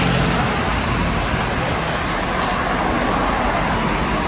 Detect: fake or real real